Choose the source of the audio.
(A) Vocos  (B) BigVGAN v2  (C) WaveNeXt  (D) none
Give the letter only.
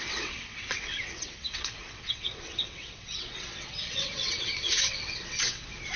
C